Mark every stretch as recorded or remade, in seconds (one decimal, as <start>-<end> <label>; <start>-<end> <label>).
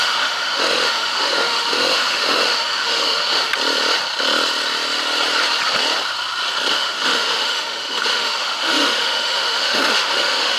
0.0-3.5 remade; 3.5-6.7 recorded; 6.7-10.6 remade